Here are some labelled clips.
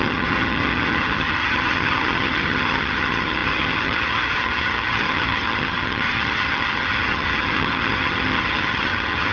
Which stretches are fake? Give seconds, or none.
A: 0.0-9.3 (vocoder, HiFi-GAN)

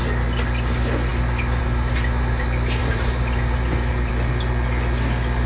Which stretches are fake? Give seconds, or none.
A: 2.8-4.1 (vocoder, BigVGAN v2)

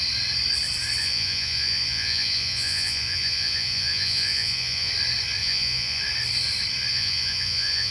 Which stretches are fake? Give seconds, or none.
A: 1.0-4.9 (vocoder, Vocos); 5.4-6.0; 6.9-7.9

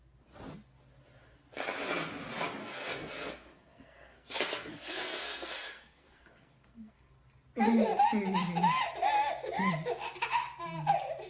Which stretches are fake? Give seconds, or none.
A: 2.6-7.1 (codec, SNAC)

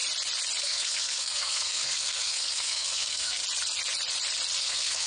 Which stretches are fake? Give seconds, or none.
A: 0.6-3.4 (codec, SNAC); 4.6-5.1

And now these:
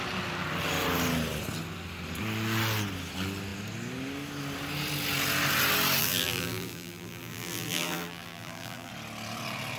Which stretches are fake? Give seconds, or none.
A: 6.0-8.9 (vocoder, BigVGAN v2)

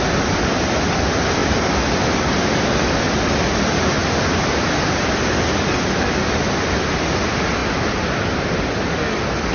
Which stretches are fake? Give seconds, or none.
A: none